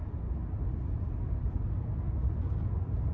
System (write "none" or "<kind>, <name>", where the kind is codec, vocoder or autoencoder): none